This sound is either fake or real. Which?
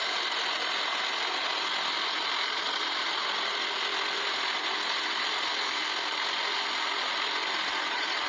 real